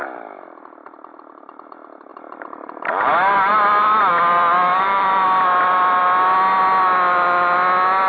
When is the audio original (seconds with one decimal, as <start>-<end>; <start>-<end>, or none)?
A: 0.0-2.1; 6.0-8.1